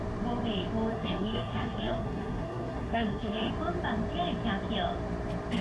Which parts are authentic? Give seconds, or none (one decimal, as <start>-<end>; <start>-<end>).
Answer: 0.0-0.9; 3.5-5.6

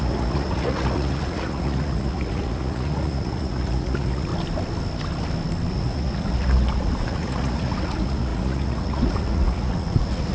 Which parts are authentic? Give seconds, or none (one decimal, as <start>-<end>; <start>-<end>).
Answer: 4.3-5.7

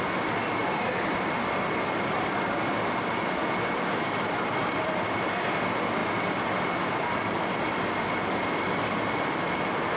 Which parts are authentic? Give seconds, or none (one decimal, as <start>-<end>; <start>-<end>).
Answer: 0.0-0.6; 2.7-4.6; 5.5-10.0

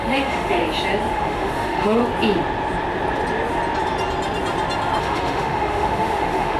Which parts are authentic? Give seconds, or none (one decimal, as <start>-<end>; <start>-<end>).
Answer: 0.6-1.1; 2.0-5.0

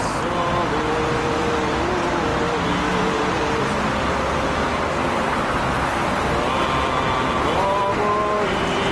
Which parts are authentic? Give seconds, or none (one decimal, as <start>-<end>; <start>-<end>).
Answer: 0.0-8.9

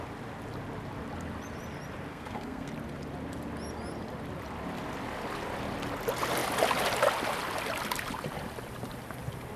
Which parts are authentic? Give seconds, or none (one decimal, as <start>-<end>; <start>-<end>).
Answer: 0.0-2.1; 2.7-9.6

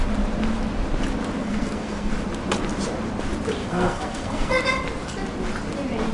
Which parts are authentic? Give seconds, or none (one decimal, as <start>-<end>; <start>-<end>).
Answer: 0.0-1.4; 2.1-3.6; 4.6-6.1

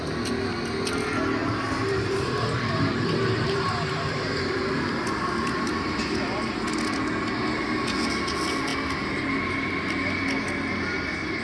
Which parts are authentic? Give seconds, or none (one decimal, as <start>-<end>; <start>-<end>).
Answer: 0.0-1.4; 6.0-11.4